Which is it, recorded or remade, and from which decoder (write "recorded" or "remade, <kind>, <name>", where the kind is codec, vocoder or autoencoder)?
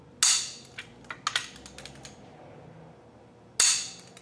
recorded